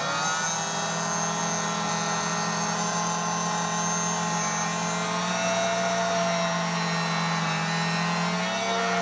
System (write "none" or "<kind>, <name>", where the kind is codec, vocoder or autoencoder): none